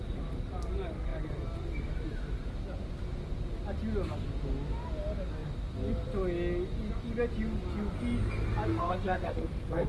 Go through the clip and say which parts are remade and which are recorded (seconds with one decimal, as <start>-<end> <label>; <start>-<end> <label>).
0.0-8.7 recorded; 8.7-9.9 remade